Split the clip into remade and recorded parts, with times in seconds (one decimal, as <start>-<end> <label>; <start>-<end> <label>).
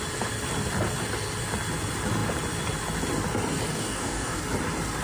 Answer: 0.0-3.7 recorded; 3.7-4.4 remade; 4.4-5.0 recorded